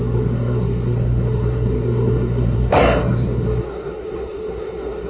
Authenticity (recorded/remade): remade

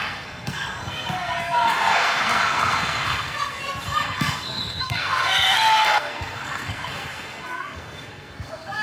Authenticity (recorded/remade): remade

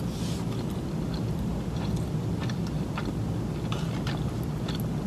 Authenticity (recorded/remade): recorded